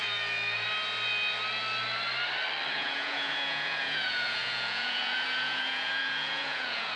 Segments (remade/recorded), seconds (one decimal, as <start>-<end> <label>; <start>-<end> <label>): 0.0-2.7 recorded; 2.7-7.0 remade